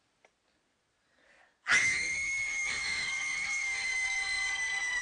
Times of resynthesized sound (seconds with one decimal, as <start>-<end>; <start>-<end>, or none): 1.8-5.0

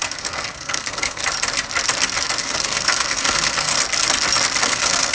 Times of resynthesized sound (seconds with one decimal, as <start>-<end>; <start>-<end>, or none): 0.0-1.2; 2.4-3.7; 4.6-5.1

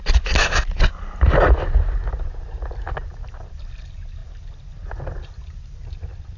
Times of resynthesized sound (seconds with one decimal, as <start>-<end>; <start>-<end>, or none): none

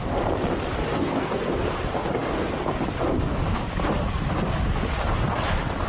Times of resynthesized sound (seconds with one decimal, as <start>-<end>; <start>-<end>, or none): 0.9-1.5

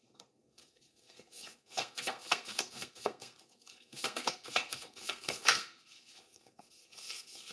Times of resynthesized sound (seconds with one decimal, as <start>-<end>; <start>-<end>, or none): 0.0-7.5

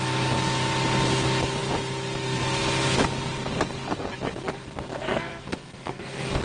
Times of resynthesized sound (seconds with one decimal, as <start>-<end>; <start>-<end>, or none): 4.9-6.4

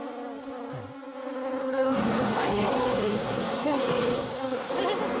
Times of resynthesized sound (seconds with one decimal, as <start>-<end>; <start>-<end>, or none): 1.6-4.7